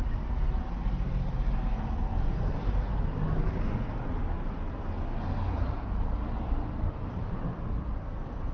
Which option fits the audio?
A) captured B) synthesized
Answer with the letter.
A